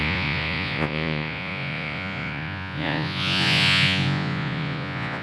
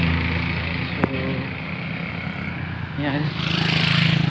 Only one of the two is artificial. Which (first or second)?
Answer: first